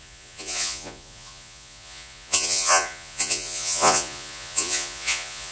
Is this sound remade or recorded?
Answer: remade